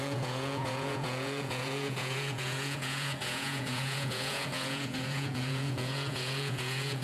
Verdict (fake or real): fake